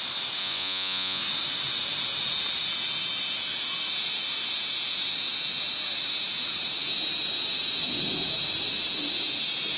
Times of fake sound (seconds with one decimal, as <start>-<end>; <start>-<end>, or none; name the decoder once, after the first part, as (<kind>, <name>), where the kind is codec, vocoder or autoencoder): 0.4-1.2 (vocoder, Vocos)